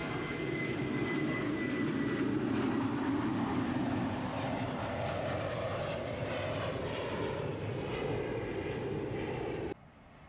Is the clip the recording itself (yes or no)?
yes